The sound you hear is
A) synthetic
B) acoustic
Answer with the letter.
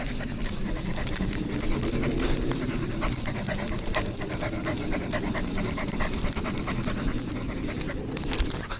B